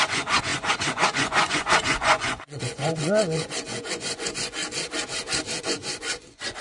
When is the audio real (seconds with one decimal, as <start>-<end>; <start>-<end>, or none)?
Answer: 4.6-5.6